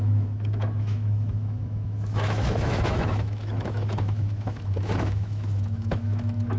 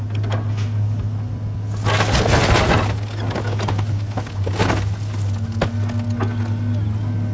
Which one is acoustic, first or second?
second